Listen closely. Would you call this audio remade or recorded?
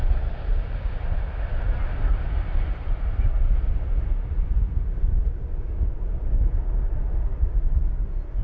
recorded